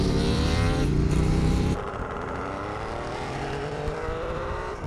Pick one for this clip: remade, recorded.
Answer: remade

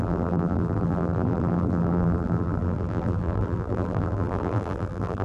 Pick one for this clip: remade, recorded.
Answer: remade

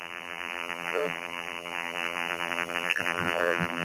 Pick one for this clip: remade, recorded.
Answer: remade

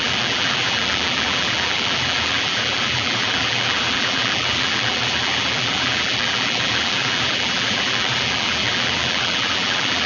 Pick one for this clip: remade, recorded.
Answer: remade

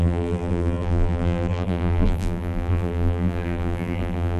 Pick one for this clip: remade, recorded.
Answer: remade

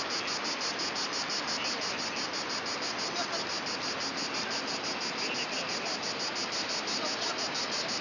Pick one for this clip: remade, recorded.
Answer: recorded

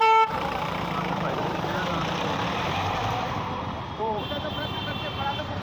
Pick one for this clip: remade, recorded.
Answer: remade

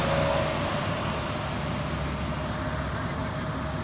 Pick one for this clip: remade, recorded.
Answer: recorded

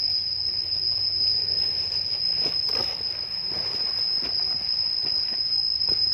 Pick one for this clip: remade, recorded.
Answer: recorded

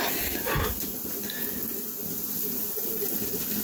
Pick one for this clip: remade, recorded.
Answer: recorded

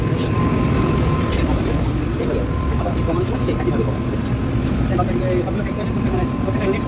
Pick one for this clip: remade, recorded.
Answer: recorded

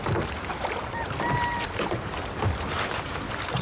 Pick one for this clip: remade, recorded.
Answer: remade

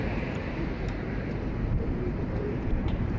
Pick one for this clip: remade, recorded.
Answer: remade